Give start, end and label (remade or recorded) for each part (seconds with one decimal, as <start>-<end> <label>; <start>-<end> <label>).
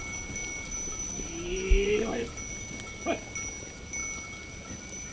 0.0-5.1 recorded